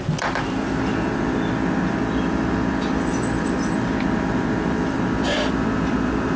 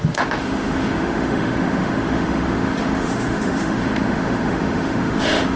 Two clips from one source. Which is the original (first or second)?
first